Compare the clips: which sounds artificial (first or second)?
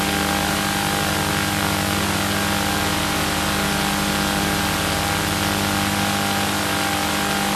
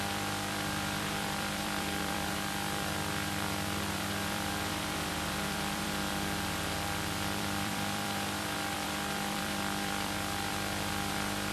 second